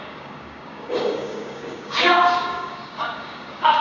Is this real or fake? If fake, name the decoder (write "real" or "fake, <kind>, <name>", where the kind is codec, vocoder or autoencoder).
fake, codec, DAC